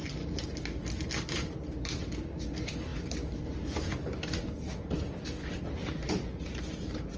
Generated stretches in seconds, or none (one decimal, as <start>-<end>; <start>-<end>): none